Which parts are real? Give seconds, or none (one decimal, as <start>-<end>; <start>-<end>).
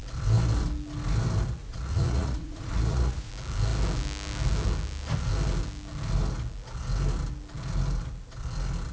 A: 0.0-1.6; 3.3-8.9